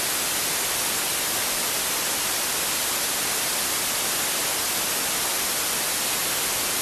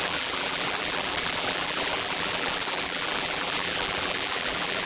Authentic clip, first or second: first